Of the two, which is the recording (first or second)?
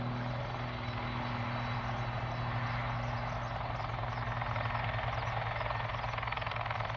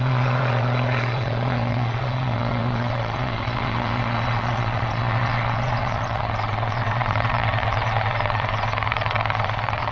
first